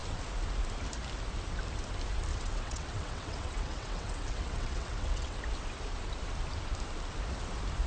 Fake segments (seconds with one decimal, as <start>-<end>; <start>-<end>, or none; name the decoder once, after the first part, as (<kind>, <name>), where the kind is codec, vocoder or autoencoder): 2.3-5.4 (vocoder, WaveNeXt)